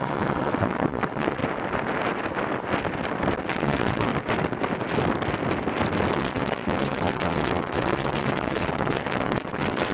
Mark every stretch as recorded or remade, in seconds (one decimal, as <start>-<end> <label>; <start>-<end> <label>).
0.0-1.4 remade; 1.4-3.4 recorded; 3.4-4.1 remade; 4.1-6.1 recorded; 6.1-9.9 remade